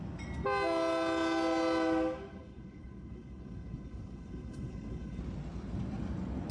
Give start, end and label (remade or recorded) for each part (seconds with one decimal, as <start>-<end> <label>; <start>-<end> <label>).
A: 0.0-2.3 recorded; 2.3-5.2 remade; 5.2-6.5 recorded